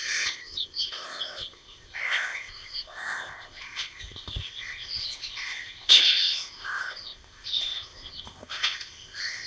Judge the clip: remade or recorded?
remade